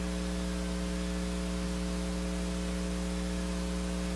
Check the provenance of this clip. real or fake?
real